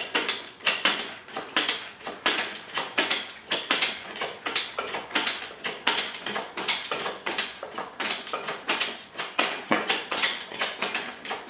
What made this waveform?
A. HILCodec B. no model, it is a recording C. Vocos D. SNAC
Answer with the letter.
C